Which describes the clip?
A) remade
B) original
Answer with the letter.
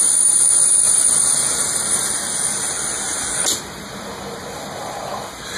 B